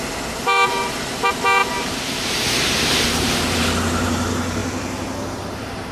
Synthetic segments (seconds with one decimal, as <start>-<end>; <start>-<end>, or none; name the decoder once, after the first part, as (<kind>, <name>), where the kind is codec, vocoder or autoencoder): 0.0-4.6 (vocoder, BigVGAN v2); 5.3-5.9